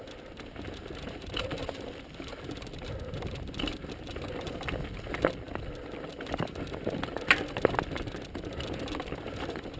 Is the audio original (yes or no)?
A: yes